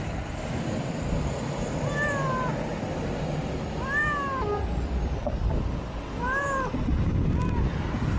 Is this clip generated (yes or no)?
no